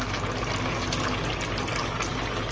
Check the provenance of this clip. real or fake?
real